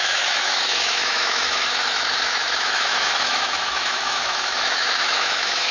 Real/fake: fake